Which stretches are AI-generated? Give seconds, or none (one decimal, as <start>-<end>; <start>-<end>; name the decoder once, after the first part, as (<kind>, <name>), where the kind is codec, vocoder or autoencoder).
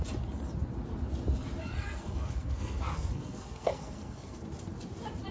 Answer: 1.6-4.4 (codec, SNAC)